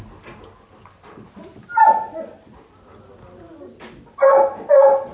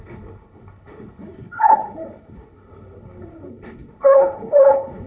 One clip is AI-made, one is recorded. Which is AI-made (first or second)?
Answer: second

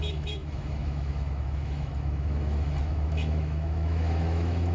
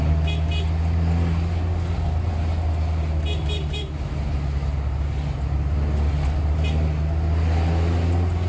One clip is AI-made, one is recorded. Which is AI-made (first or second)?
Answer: first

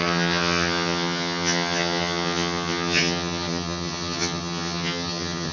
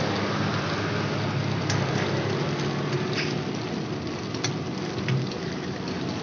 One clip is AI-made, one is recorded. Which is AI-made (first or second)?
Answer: first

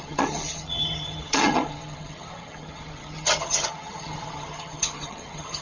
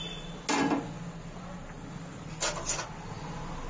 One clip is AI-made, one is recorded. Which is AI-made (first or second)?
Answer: first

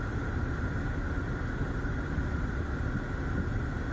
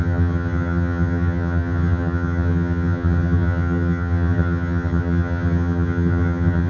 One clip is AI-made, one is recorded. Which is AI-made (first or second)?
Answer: second